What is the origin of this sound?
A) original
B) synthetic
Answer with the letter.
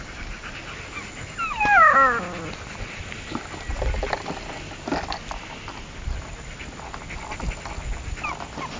A